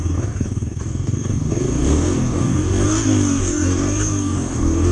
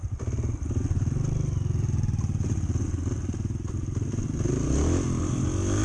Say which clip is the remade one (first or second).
first